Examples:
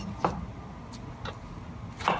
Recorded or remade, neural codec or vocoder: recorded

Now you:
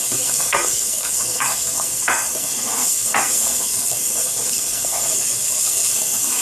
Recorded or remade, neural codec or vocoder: remade, codec, SNAC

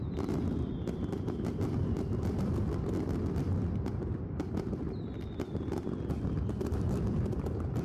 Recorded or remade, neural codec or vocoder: recorded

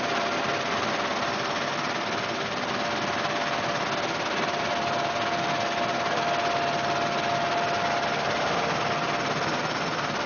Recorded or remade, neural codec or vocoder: recorded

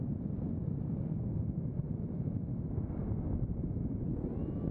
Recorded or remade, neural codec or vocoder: recorded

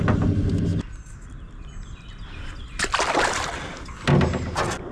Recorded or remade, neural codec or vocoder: recorded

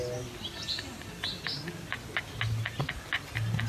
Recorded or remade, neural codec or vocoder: recorded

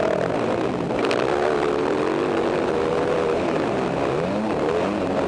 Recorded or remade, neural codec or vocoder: recorded